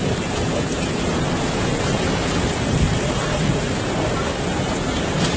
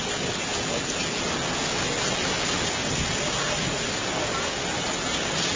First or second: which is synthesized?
first